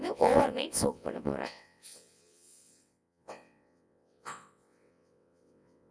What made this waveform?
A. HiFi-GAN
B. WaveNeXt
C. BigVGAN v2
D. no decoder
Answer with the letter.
B